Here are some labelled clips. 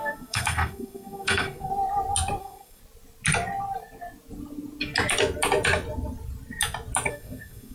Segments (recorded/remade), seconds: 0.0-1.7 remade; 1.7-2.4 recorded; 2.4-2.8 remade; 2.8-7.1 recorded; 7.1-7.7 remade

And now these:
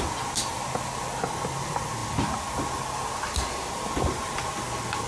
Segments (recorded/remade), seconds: 0.0-5.1 recorded

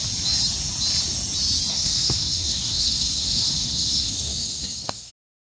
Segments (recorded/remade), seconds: 0.0-1.7 recorded; 1.7-5.1 remade; 5.1-5.6 recorded